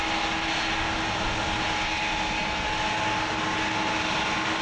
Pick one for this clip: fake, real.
real